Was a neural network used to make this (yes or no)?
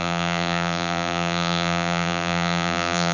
yes